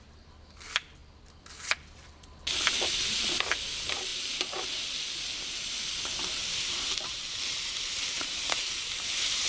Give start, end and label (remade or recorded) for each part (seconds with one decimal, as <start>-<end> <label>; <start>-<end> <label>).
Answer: 0.0-6.4 recorded; 6.4-9.5 remade